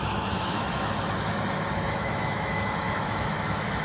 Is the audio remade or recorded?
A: remade